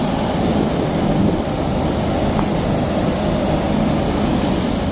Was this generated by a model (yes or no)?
no